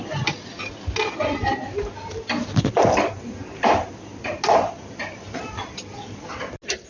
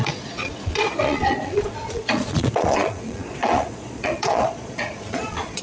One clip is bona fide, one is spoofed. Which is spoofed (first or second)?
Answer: second